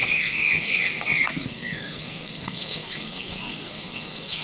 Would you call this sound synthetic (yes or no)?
yes